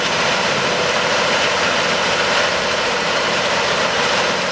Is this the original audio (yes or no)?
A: no